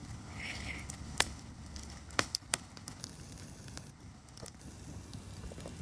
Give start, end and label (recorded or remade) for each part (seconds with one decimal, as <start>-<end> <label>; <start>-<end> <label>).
0.0-3.0 remade; 3.0-3.9 recorded; 3.9-4.6 remade; 4.6-5.8 recorded